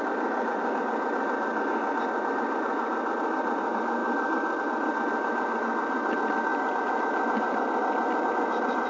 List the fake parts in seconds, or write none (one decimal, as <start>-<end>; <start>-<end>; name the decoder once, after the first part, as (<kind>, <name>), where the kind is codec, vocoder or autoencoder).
none